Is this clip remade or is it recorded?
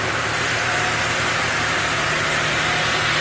remade